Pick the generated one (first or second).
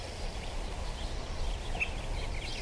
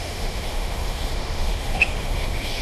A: second